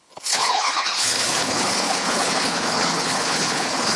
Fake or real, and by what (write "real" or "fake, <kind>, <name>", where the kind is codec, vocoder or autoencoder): fake, codec, HILCodec